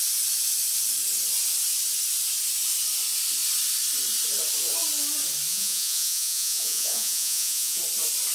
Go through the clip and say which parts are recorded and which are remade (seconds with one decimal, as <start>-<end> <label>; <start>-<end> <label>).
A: 0.0-5.5 recorded; 5.5-7.8 remade; 7.8-8.3 recorded